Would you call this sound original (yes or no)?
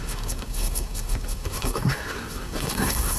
no